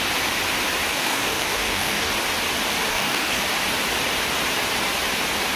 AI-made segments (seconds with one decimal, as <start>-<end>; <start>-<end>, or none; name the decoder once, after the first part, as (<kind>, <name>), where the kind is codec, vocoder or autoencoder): 0.9-2.1 (codec, DAC); 2.9-3.4